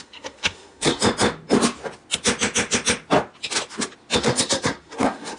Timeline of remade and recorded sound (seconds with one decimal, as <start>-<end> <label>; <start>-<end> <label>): 0.0-1.0 remade; 1.0-4.2 recorded; 4.2-5.4 remade